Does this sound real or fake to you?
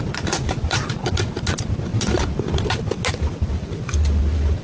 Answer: real